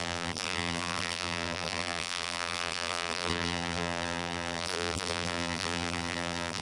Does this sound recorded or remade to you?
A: remade